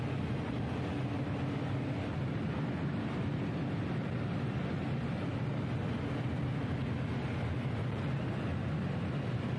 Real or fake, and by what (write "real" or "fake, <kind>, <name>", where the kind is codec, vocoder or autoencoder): real